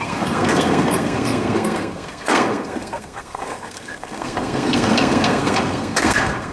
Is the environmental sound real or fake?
fake